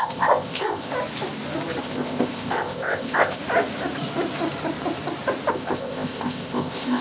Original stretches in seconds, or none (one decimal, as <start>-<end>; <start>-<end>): 0.9-1.8; 3.4-5.5